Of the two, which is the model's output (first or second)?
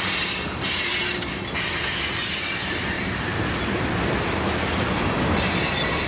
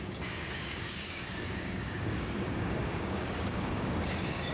second